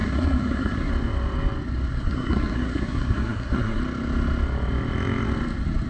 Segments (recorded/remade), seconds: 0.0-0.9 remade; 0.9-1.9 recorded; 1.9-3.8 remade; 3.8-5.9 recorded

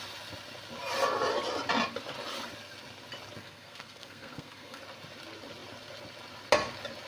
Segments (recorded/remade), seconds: 0.0-3.4 recorded; 3.4-4.8 remade; 4.8-7.1 recorded

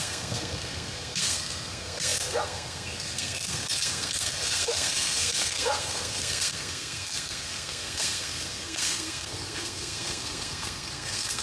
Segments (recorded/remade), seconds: 0.0-11.4 remade